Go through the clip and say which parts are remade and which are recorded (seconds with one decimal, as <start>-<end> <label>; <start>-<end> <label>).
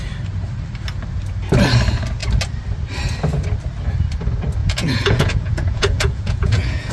0.0-4.6 recorded; 4.6-6.9 remade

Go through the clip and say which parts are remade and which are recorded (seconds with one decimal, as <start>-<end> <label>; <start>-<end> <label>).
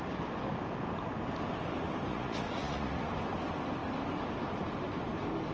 0.0-2.1 recorded; 2.1-3.1 remade; 3.1-5.5 recorded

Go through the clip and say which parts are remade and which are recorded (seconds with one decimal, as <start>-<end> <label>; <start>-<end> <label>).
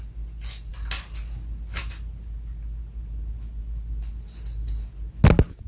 0.0-5.7 recorded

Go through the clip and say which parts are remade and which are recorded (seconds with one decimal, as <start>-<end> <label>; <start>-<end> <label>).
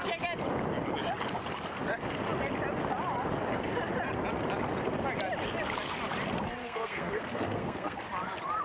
0.0-6.6 recorded; 6.6-8.0 remade; 8.0-8.6 recorded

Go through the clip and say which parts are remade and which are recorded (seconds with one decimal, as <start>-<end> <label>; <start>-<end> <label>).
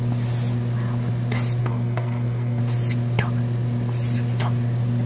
0.0-1.6 recorded; 1.6-2.6 remade; 2.6-5.1 recorded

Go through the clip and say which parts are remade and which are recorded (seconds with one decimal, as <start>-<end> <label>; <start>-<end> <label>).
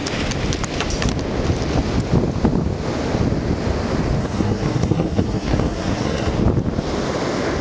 0.0-4.2 recorded; 4.2-6.3 remade; 6.3-7.6 recorded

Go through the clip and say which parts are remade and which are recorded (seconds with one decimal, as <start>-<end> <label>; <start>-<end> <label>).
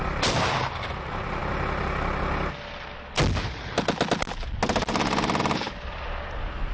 0.0-6.7 recorded